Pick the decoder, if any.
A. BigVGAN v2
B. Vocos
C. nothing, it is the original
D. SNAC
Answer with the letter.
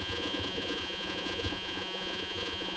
B